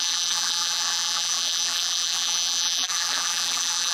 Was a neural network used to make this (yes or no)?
yes